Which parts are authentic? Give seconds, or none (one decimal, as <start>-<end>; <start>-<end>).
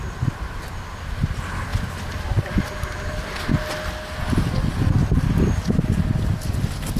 0.0-1.7; 2.6-7.0